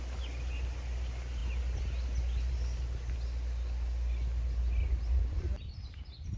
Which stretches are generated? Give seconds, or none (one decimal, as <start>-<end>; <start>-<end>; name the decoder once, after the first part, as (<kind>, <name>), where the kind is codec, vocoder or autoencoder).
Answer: none